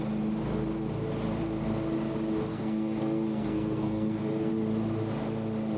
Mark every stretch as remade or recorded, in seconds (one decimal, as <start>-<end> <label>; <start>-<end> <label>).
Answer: 0.0-2.5 recorded; 2.5-4.5 remade; 4.5-5.8 recorded